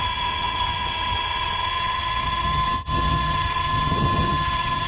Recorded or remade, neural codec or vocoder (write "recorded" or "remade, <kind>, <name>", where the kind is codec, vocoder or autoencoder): remade, vocoder, HiFi-GAN